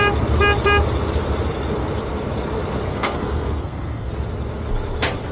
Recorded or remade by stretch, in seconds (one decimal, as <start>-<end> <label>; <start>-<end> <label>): 0.0-2.9 recorded; 2.9-4.1 remade; 4.1-5.3 recorded